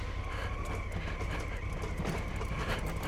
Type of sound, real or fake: real